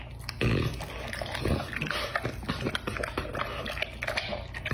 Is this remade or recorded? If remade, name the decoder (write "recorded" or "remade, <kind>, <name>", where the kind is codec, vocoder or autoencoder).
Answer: recorded